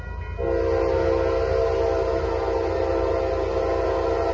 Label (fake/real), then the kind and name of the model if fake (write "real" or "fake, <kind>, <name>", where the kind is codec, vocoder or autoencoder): real